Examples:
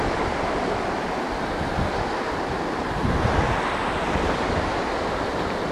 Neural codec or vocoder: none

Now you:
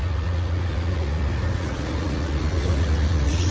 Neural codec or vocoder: vocoder, Vocos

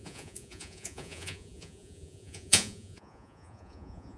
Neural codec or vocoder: vocoder, Vocos